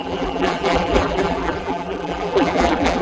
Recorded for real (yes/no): no